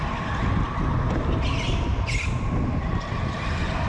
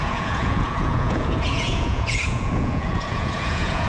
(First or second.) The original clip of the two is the first